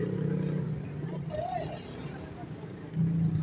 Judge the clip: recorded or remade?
recorded